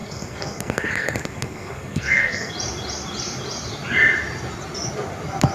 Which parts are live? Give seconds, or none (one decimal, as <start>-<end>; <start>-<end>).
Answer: 2.5-5.5